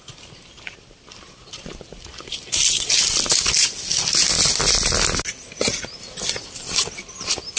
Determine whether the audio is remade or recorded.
recorded